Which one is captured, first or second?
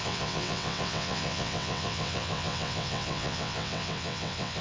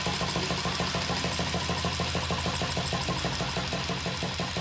second